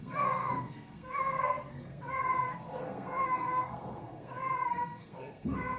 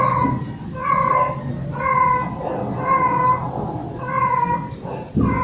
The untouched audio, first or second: second